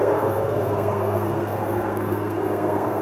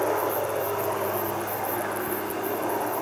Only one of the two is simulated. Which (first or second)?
first